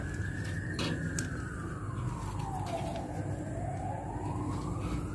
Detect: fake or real real